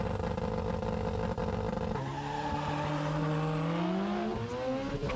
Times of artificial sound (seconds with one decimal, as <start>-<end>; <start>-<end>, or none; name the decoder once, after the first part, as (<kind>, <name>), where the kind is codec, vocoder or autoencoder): none